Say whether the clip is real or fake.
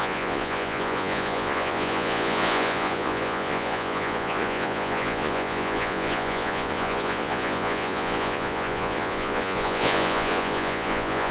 fake